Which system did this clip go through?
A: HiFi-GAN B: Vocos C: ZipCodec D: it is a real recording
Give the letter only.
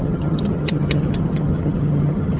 A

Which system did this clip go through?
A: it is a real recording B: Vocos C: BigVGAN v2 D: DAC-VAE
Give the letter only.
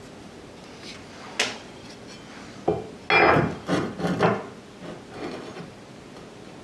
A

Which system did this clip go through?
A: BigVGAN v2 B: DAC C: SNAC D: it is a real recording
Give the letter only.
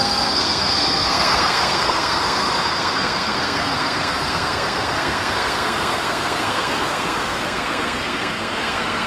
C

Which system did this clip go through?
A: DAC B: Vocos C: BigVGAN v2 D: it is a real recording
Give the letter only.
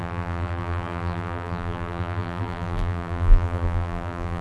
C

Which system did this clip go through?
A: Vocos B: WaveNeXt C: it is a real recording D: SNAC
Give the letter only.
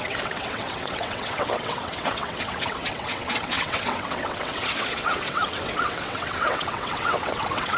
B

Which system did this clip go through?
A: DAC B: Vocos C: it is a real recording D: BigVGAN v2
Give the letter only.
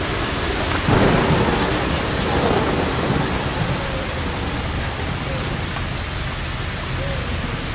C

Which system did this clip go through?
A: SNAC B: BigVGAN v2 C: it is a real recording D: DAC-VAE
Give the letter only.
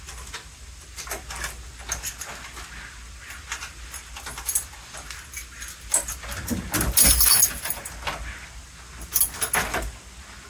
C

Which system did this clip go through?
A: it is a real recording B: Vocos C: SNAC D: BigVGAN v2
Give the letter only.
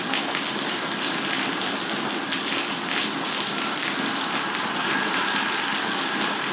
A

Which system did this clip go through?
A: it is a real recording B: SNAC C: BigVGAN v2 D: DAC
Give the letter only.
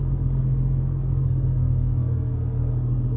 B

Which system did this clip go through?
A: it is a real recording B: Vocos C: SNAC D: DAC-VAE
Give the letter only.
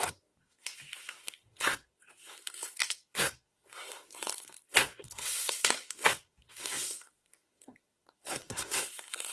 C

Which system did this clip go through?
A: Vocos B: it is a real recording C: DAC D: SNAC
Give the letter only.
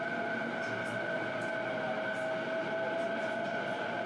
B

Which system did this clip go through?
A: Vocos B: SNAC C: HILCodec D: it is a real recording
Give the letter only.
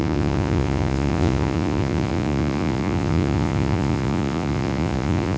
A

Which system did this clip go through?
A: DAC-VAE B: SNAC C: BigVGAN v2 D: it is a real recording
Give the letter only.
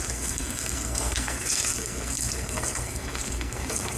B